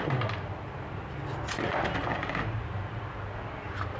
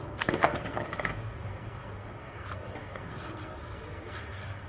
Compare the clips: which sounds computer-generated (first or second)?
second